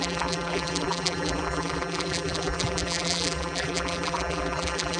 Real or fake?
fake